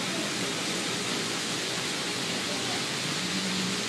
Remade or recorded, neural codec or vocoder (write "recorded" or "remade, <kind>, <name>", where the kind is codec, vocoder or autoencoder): remade, vocoder, Vocos